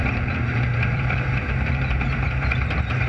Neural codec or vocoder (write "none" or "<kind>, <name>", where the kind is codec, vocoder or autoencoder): vocoder, BigVGAN v2